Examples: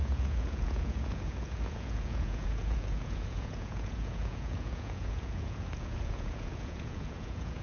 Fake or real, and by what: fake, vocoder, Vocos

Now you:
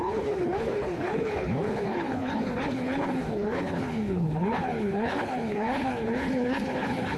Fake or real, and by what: fake, codec, HILCodec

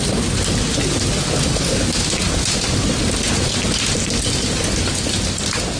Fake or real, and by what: real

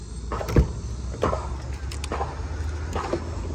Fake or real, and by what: real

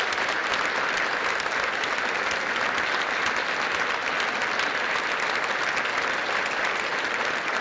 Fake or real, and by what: real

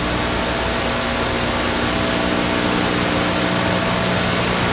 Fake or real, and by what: real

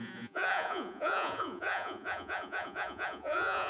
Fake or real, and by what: fake, vocoder, Vocos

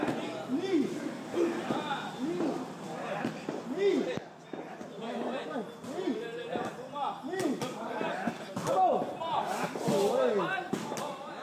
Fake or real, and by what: real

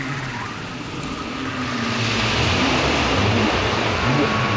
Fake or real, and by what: real